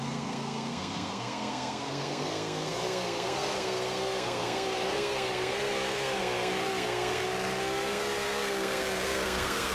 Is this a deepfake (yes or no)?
yes